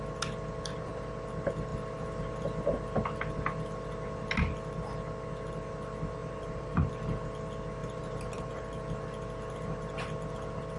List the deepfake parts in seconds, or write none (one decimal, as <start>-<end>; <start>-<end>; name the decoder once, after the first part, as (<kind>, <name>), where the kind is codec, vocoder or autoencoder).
6.2-6.9 (vocoder, BigVGAN v2); 7.8-8.8